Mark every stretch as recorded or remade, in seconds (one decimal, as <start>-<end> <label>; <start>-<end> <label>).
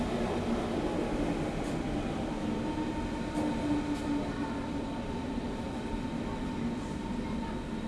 0.0-5.2 recorded; 5.2-5.7 remade; 5.7-7.9 recorded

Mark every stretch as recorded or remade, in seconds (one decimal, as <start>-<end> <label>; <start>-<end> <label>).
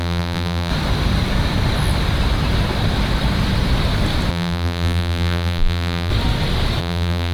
0.0-0.7 remade; 0.7-4.3 recorded; 4.3-6.1 remade; 6.1-6.8 recorded; 6.8-7.3 remade